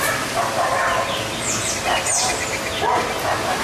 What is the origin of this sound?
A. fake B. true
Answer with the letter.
B